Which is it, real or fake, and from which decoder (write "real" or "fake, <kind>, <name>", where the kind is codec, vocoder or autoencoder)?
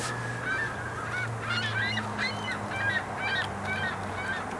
real